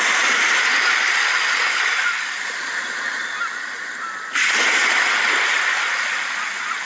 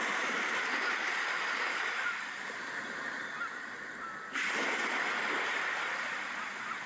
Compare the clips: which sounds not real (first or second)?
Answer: second